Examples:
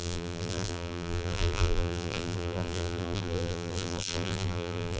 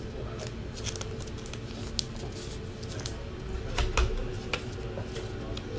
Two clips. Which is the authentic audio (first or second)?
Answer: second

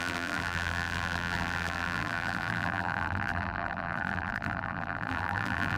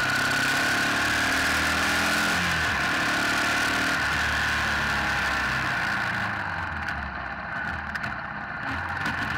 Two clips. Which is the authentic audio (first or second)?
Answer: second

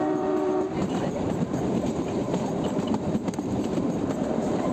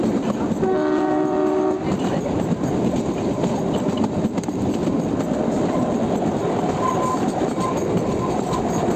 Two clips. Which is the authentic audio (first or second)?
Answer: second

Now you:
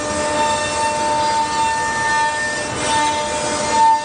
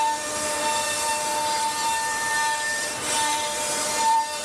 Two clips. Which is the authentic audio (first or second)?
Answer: first